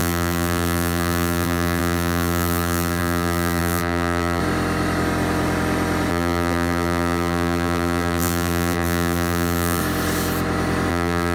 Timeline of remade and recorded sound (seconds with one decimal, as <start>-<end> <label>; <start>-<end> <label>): 0.0-4.4 remade; 4.4-6.1 recorded; 6.1-9.8 remade; 9.8-10.9 recorded; 10.9-11.3 remade